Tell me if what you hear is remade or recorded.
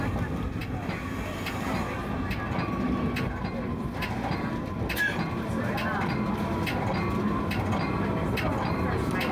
recorded